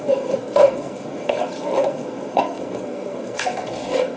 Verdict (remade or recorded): remade